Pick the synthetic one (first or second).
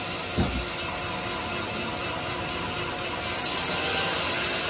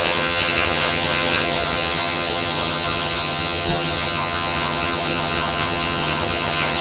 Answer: second